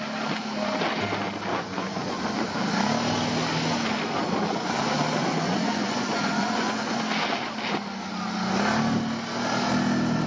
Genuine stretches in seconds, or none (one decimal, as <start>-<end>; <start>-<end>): 0.0-1.5; 2.2-5.2; 7.0-10.3